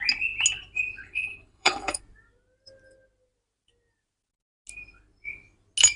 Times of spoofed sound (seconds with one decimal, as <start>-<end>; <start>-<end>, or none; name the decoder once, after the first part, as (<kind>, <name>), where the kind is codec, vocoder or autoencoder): 1.0-2.0 (codec, HILCodec)